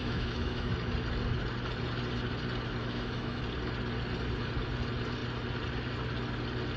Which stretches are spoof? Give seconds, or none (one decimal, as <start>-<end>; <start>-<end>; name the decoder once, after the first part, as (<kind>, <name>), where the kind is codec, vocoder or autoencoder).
0.0-0.7 (autoencoder, DAC-VAE); 2.8-3.4